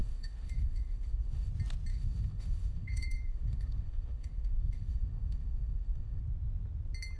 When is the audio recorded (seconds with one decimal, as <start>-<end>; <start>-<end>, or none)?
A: 1.5-1.9; 6.2-7.2